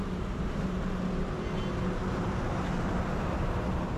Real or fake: real